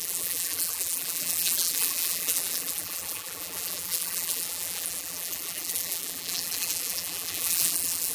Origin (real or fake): fake